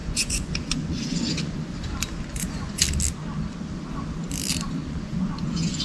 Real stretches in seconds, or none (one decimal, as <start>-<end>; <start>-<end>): 1.9-2.3; 2.8-4.8